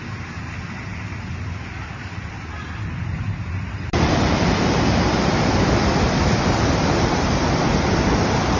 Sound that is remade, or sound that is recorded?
remade